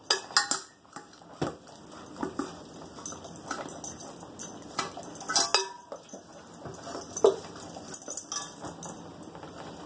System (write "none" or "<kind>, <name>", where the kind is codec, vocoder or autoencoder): none